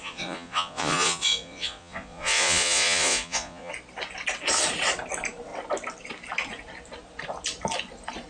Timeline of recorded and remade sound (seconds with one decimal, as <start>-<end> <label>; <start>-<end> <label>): 0.0-3.7 remade; 3.7-8.3 recorded